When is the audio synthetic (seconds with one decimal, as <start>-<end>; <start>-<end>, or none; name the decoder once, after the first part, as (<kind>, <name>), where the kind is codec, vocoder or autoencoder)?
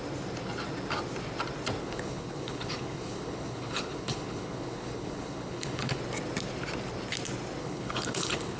1.8-6.0 (codec, HILCodec); 7.6-8.6